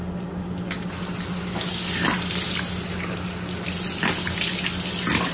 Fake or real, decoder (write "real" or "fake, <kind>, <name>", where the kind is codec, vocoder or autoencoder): real